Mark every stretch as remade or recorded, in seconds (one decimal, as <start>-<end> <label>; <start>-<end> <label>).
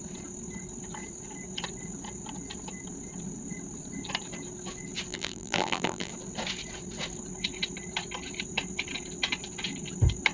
0.0-5.1 recorded; 5.1-6.1 remade; 6.1-10.3 recorded